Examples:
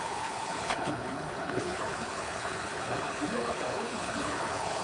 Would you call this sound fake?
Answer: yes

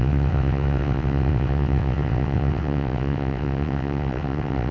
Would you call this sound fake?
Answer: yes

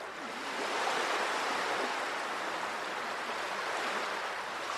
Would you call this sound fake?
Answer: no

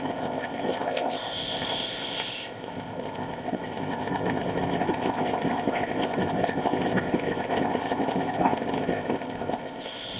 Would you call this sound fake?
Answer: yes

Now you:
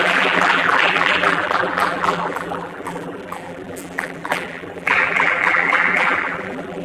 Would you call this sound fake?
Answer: yes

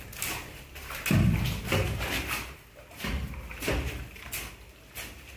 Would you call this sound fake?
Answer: no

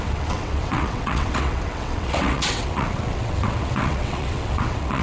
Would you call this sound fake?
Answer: yes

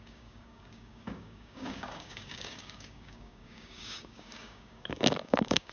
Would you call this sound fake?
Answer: yes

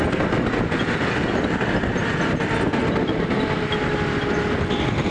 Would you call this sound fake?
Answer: no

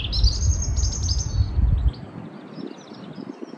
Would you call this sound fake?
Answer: no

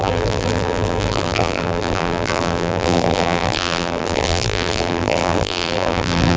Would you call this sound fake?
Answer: yes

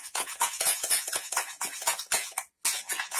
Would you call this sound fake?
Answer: yes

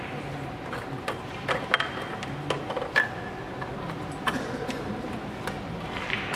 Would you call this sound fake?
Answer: no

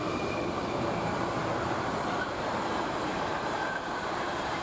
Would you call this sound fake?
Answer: yes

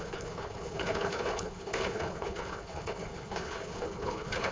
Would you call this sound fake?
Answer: yes